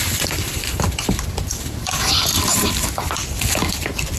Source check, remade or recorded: remade